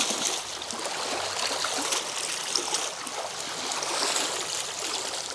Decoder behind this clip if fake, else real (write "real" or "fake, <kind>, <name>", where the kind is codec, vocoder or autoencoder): real